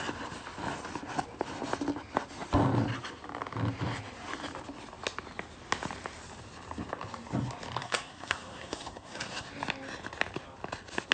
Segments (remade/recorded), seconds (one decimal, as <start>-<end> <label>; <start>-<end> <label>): 0.0-7.8 recorded; 7.8-9.5 remade; 9.5-11.1 recorded